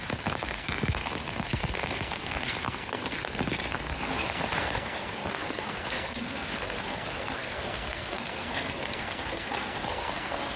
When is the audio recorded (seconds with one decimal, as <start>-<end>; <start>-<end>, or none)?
none

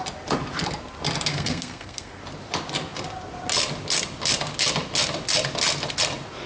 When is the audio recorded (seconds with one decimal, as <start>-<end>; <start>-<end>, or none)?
0.0-1.3; 2.2-6.5

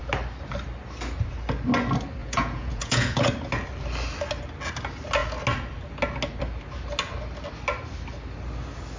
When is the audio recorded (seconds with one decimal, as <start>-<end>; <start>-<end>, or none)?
0.0-2.2; 3.3-9.0

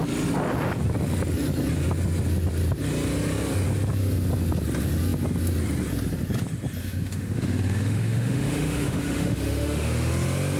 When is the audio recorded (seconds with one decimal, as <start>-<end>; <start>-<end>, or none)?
0.0-6.8; 10.1-10.6

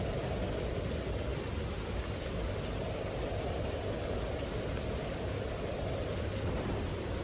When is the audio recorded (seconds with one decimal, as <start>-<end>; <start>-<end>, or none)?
0.0-7.2

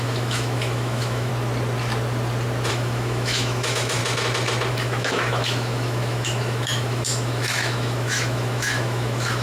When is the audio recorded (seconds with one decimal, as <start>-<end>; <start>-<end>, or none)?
1.3-2.7; 4.0-4.7